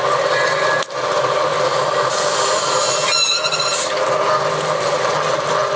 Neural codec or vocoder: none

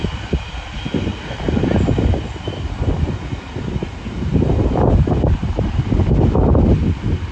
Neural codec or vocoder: none